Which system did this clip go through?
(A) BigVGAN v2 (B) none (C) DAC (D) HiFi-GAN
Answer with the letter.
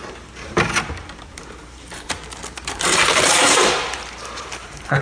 A